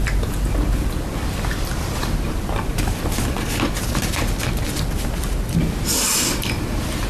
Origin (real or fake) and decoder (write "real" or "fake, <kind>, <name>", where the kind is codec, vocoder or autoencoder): real